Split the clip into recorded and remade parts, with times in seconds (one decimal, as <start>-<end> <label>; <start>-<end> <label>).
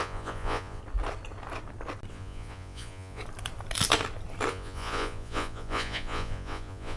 0.0-0.8 remade; 0.8-2.1 recorded; 2.1-3.2 remade; 3.2-4.5 recorded; 4.5-7.0 remade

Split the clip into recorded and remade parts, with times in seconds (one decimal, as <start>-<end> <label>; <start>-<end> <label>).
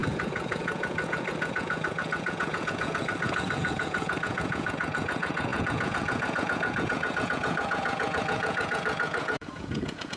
0.0-10.2 remade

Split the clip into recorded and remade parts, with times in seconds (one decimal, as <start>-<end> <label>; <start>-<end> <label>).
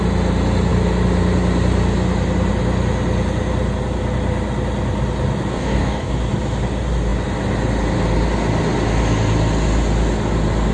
0.0-5.5 recorded; 5.5-6.1 remade; 6.1-10.7 recorded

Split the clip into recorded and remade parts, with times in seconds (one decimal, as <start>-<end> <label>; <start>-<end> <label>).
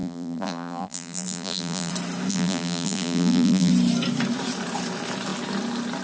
0.0-1.9 remade; 1.9-2.3 recorded; 2.3-3.7 remade; 3.7-6.0 recorded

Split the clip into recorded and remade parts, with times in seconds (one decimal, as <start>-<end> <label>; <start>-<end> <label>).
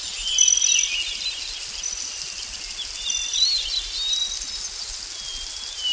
0.0-5.9 recorded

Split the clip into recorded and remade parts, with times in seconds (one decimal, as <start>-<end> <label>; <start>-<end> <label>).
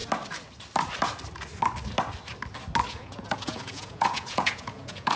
0.0-2.9 recorded; 2.9-5.2 remade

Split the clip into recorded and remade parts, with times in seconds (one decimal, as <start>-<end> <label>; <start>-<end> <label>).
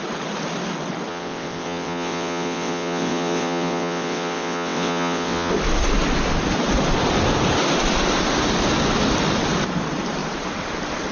0.0-1.1 recorded; 1.1-5.5 remade; 5.5-11.1 recorded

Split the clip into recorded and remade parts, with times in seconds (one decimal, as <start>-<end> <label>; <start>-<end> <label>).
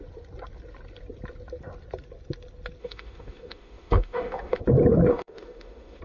0.0-2.8 recorded; 2.8-4.6 remade; 4.6-5.1 recorded; 5.1-6.0 remade